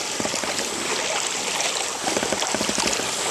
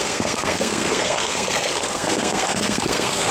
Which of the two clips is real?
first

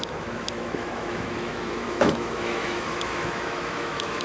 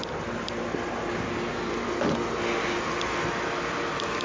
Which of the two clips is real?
second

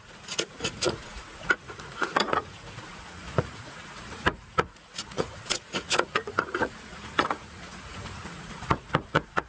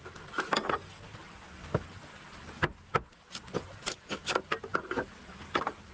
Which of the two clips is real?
second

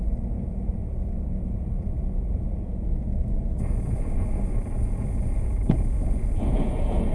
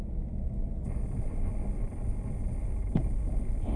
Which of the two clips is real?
second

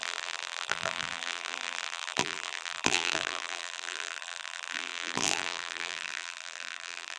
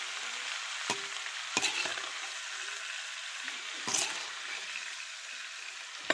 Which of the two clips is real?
second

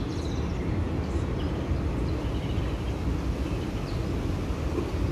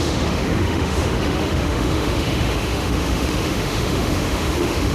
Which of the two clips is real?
first